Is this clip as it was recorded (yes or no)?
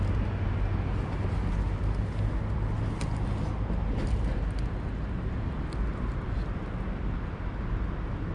yes